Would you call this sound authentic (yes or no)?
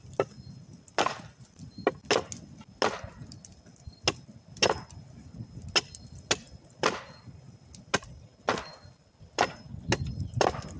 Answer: yes